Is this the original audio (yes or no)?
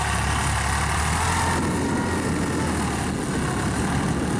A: yes